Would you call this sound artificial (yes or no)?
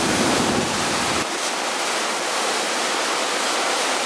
yes